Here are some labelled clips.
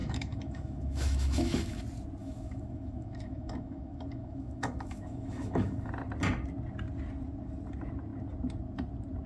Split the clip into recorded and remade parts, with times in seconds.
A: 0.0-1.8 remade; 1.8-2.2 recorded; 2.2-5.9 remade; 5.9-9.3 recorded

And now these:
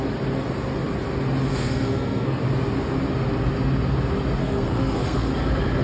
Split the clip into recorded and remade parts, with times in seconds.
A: 0.0-1.5 recorded; 1.5-2.4 remade; 2.4-4.4 recorded; 4.4-5.3 remade; 5.3-5.8 recorded

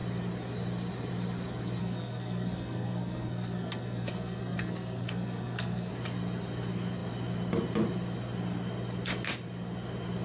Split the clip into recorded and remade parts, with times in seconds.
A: 0.0-1.8 recorded; 1.8-5.9 remade; 5.9-10.2 recorded

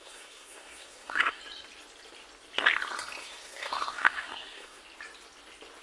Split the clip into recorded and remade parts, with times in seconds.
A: 0.0-1.4 remade; 1.4-3.2 recorded; 3.2-4.8 remade; 4.8-5.8 recorded

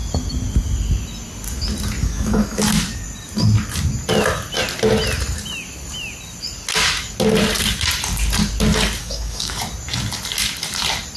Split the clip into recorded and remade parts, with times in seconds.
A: 0.0-2.0 recorded; 2.0-2.6 remade; 2.6-9.0 recorded; 9.0-9.6 remade; 9.6-11.2 recorded